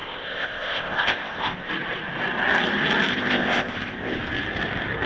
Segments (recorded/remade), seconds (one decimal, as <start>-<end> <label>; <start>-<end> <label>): 0.0-1.7 remade; 1.7-3.1 recorded; 3.1-4.2 remade; 4.2-5.1 recorded